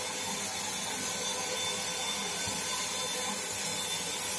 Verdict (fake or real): real